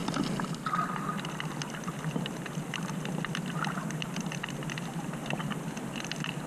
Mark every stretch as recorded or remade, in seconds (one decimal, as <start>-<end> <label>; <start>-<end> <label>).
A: 0.0-6.5 recorded